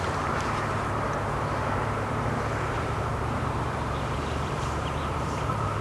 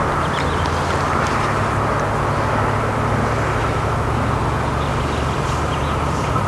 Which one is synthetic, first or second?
first